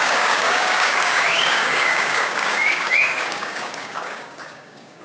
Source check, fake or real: fake